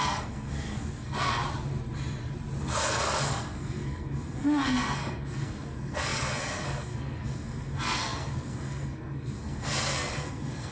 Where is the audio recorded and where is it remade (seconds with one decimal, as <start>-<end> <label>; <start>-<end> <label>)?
0.0-1.4 remade; 1.4-2.6 recorded; 2.6-10.7 remade